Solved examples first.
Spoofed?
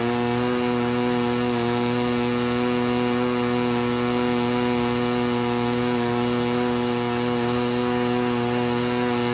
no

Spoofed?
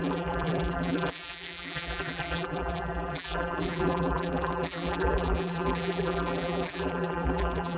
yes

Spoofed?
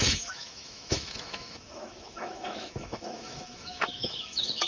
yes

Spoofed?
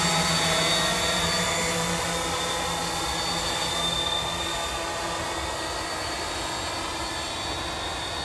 no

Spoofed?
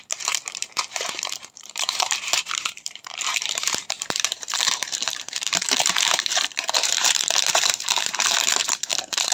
yes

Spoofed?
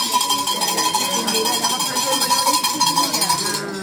no